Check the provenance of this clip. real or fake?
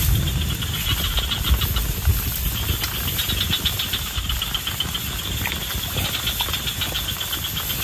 real